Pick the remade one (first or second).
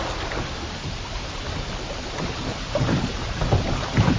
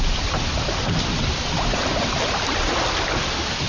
second